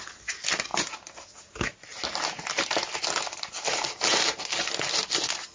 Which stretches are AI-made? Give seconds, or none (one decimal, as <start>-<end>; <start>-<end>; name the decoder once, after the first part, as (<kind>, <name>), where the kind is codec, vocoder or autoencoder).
none